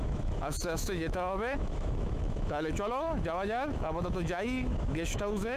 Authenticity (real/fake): fake